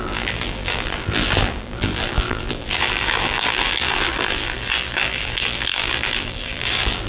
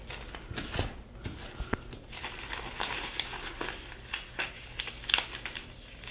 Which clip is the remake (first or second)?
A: first